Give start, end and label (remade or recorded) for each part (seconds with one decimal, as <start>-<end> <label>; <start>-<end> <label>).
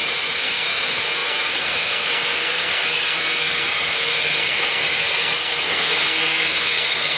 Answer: 0.0-7.2 remade